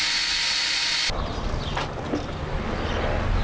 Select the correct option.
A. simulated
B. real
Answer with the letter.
B